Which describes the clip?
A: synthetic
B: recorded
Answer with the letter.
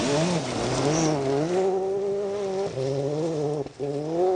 B